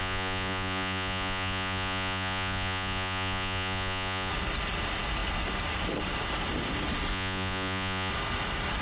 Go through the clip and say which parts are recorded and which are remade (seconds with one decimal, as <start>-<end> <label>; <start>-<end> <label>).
0.0-4.3 remade; 4.3-7.1 recorded; 7.1-8.1 remade; 8.1-8.8 recorded